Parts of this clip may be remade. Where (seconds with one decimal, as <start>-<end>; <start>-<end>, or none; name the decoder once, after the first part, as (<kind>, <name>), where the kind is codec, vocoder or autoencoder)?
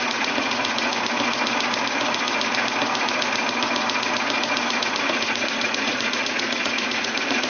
0.0-0.9 (vocoder, Vocos); 4.8-7.5